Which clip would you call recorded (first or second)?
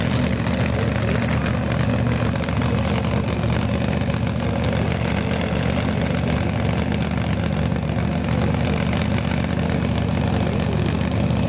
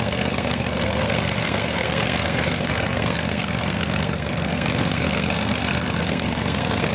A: first